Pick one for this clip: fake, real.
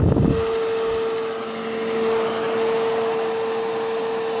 real